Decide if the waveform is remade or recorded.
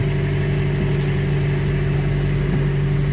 recorded